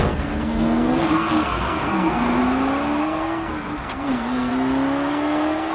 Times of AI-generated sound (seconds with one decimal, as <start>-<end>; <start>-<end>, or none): 0.0-2.4; 3.0-4.5; 5.1-5.7